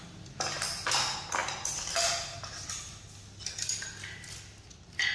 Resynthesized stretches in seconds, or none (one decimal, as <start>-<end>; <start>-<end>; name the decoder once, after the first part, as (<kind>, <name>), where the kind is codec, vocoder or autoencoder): none